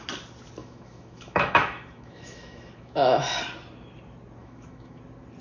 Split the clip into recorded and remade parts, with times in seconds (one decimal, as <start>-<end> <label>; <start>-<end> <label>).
0.0-0.6 recorded; 0.6-3.4 remade; 3.4-4.4 recorded; 4.4-5.0 remade; 5.0-5.4 recorded